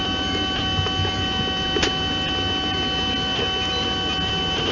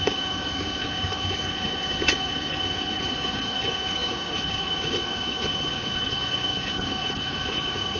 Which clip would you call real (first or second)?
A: first